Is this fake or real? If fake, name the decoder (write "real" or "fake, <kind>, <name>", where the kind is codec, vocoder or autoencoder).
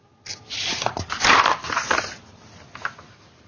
real